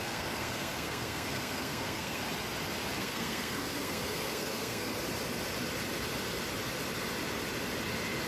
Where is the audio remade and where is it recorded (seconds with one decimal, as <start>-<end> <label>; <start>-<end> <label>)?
0.0-2.2 remade; 2.2-3.0 recorded; 3.0-4.9 remade; 4.9-8.3 recorded